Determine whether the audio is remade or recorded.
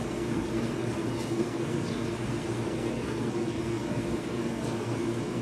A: remade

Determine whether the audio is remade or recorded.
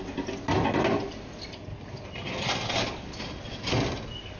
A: recorded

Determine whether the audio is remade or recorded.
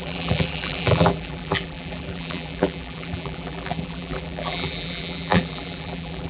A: remade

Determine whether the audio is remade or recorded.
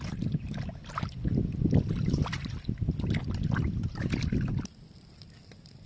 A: recorded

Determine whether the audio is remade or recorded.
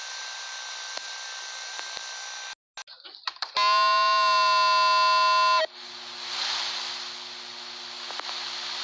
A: recorded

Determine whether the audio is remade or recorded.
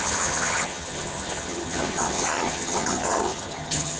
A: remade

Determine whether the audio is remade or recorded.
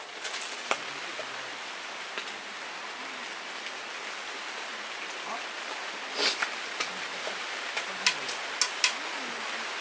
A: recorded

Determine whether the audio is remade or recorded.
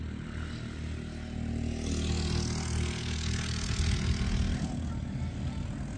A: recorded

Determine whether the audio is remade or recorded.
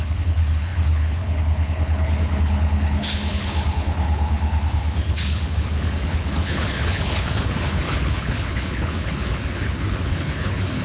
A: remade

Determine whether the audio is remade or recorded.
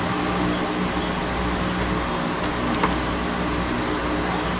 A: recorded